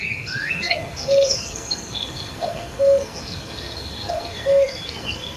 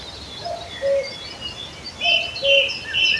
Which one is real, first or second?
second